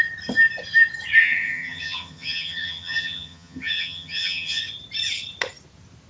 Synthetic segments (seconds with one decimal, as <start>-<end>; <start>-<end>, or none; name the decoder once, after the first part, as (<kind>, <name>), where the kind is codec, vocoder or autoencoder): 1.2-4.6 (vocoder, HiFi-GAN)